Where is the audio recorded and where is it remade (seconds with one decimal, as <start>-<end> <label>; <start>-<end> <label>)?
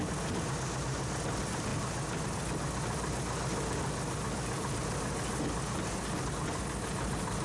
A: 0.0-7.4 recorded